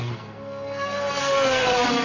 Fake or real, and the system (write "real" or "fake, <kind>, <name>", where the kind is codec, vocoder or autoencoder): fake, codec, SNAC